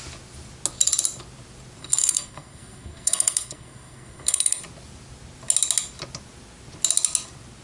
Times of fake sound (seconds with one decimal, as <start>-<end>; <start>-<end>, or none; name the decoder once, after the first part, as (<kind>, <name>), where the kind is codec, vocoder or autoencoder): 1.8-4.6 (codec, SNAC)